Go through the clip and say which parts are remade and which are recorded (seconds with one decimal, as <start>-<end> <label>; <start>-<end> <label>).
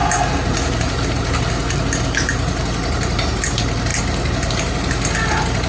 0.0-5.7 recorded